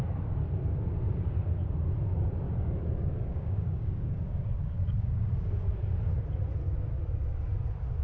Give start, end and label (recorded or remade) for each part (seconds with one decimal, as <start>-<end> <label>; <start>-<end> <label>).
0.0-3.3 recorded; 3.3-5.6 remade; 5.6-8.0 recorded